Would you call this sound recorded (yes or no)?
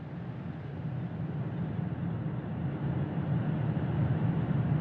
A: yes